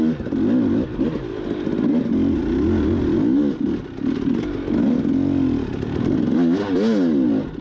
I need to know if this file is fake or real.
real